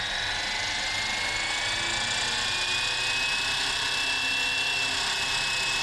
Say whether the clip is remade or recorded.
recorded